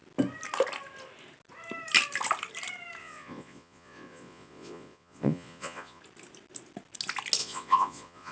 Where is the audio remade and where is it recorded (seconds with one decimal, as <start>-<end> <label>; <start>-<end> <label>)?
0.0-3.0 recorded; 3.0-6.0 remade; 6.0-7.4 recorded; 7.4-8.3 remade